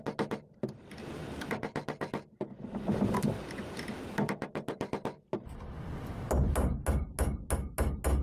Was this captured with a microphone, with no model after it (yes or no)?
yes